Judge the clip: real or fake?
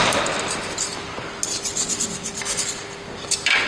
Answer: real